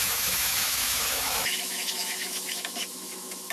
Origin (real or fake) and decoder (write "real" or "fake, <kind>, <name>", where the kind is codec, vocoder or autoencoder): fake, autoencoder, DAC-VAE